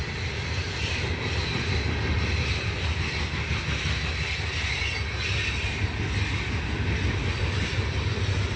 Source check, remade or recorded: recorded